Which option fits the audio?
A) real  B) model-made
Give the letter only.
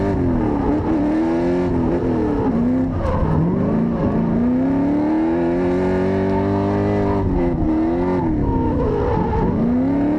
A